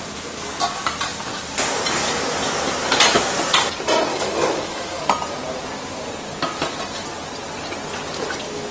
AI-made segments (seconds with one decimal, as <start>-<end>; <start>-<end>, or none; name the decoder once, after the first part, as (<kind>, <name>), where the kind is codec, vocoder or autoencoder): 4.1-5.0 (autoencoder, DAC-VAE)